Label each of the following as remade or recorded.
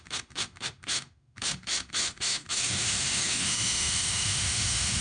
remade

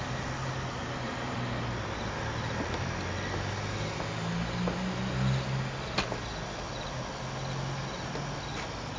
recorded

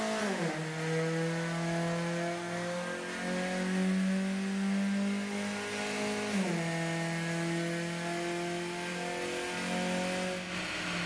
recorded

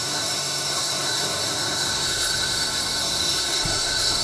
remade